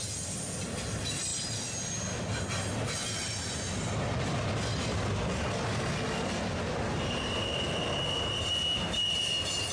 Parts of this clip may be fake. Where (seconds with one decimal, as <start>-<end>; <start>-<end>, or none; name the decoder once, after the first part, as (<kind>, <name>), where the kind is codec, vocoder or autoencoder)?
none